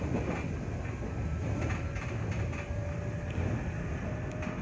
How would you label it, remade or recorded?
recorded